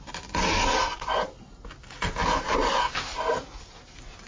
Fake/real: real